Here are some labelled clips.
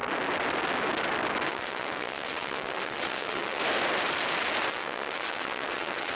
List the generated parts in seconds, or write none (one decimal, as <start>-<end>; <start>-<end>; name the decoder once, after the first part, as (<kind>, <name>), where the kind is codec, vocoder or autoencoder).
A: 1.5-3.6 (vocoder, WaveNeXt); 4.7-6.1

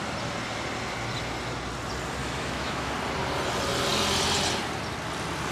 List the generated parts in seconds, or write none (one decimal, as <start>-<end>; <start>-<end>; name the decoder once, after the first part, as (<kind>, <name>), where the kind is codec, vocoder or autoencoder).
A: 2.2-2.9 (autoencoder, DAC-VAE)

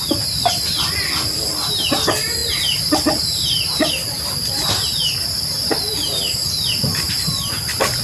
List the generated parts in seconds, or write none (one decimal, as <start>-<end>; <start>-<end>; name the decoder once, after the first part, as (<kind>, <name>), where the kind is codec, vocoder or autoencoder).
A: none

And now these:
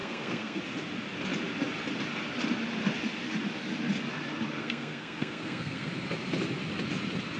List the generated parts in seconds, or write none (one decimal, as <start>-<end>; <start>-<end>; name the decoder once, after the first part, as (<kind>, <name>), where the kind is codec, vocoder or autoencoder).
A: 0.0-0.6 (codec, SNAC); 4.6-5.9

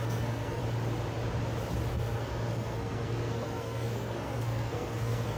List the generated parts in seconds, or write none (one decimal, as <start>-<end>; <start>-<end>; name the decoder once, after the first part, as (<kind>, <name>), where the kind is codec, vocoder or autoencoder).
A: 0.0-0.6 (codec, SNAC); 1.9-5.4